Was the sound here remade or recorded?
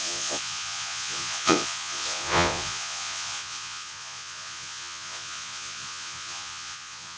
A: remade